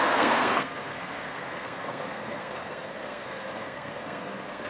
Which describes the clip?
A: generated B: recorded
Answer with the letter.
A